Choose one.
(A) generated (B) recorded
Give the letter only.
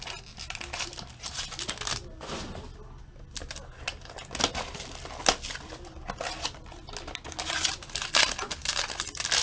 B